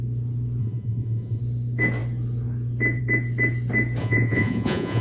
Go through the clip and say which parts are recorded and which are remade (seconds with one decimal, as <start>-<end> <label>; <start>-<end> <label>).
0.0-0.6 recorded; 0.6-1.4 remade; 1.4-4.0 recorded; 4.0-5.0 remade